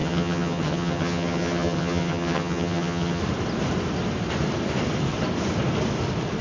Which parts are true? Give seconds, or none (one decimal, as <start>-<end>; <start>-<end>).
3.2-6.4